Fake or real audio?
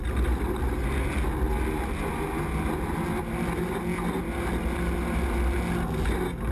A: real